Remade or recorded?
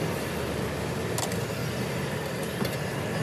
recorded